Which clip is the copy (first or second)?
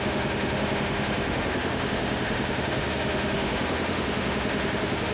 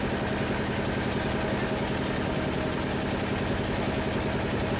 first